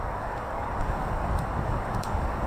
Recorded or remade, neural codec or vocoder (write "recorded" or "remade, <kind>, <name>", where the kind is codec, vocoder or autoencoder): remade, codec, DAC